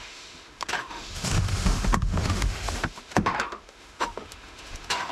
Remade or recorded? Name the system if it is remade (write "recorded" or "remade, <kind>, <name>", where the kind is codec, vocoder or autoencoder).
remade, autoencoder, DAC-VAE